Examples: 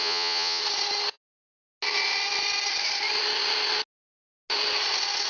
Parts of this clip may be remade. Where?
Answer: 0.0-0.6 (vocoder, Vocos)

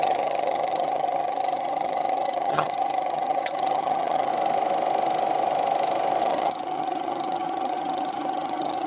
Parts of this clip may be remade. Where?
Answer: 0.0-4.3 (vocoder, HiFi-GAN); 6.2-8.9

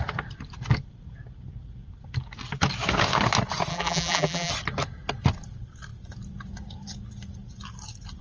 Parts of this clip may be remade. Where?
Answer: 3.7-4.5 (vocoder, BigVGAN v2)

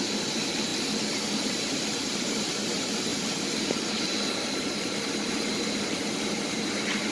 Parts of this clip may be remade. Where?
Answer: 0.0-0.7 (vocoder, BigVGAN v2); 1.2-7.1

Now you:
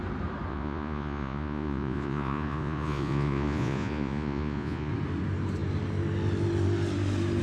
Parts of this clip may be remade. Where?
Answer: 0.5-4.9 (vocoder, Vocos)

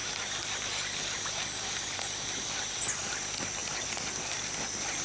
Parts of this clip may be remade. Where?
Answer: none